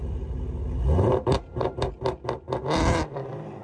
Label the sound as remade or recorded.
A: recorded